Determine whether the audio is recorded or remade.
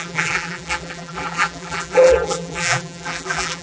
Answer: remade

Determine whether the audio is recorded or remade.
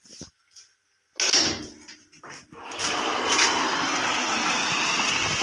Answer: recorded